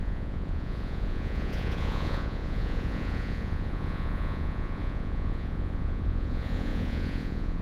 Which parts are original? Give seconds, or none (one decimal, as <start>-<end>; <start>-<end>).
none